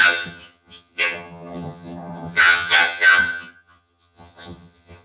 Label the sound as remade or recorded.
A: remade